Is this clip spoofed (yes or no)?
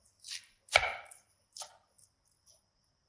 yes